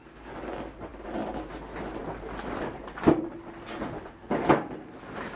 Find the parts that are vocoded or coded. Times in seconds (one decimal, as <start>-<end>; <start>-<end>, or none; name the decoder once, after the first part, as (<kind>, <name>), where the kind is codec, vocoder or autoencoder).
none